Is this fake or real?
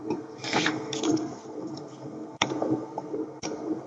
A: fake